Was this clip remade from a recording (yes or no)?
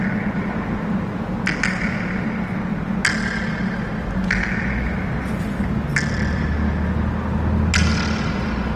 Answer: no